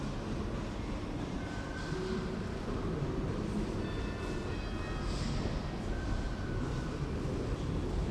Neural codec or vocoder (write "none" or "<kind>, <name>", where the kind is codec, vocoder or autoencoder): none